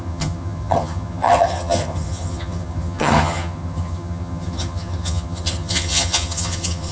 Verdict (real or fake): fake